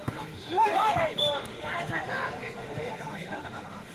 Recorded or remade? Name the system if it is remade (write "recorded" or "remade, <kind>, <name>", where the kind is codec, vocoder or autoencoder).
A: remade, autoencoder, DAC-VAE